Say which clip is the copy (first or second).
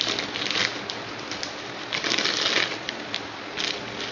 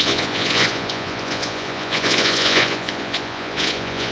second